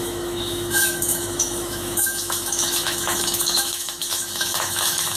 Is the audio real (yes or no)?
no